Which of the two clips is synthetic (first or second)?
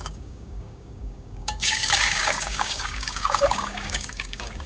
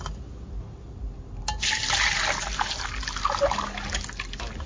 first